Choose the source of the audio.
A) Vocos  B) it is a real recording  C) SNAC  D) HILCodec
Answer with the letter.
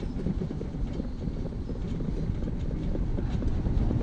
B